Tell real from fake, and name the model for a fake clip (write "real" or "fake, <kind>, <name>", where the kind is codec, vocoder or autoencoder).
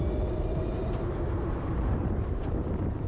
fake, vocoder, BigVGAN v2